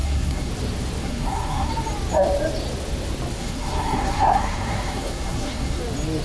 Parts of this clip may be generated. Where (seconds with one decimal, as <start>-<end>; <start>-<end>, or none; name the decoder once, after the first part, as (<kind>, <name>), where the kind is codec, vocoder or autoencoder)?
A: 0.0-0.5 (codec, SNAC); 1.0-1.7; 3.4-5.8